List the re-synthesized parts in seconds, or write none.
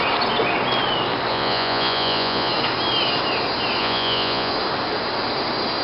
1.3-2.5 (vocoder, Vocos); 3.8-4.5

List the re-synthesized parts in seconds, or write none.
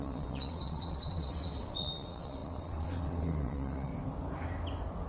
0.0-3.9 (vocoder, WaveNeXt)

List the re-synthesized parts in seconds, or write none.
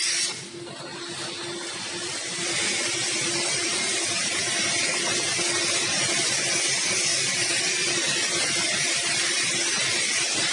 2.0-4.4 (vocoder, BigVGAN v2); 7.1-9.8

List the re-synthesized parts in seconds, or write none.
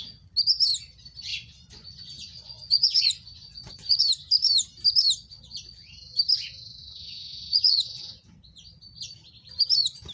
1.3-4.0 (vocoder, Vocos); 6.8-8.2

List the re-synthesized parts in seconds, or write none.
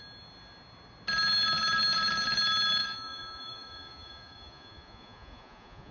2.8-5.9 (vocoder, Vocos)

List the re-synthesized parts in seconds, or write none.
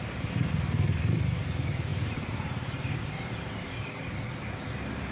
none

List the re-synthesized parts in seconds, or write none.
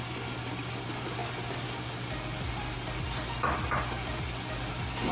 none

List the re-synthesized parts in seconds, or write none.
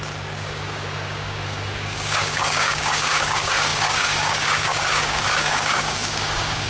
0.0-6.7 (codec, DAC)